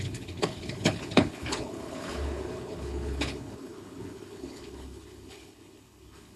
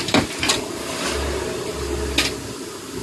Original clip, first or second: second